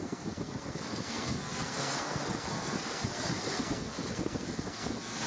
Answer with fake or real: fake